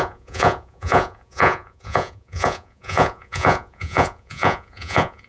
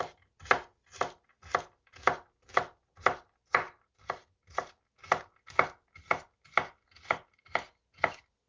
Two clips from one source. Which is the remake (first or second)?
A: first